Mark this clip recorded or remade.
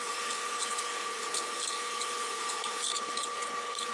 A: remade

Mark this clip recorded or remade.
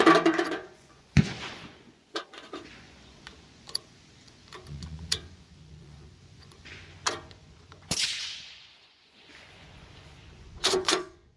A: remade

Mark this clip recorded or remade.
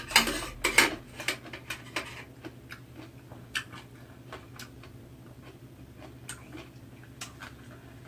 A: recorded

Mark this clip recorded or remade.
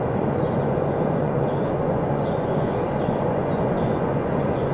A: remade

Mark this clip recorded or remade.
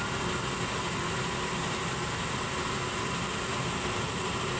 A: recorded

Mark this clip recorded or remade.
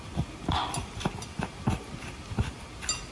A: recorded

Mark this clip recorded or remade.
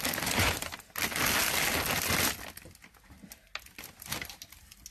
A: recorded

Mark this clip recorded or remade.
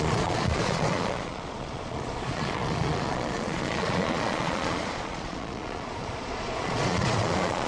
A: remade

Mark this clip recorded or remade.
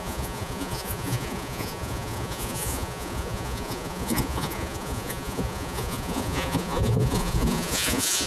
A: remade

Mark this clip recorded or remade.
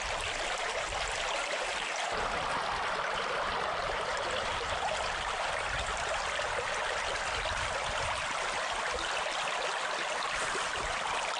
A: recorded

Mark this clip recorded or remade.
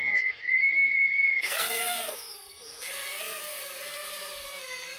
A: remade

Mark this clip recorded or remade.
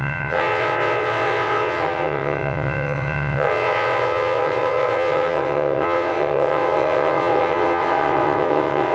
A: remade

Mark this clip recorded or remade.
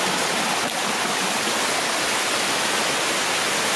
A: recorded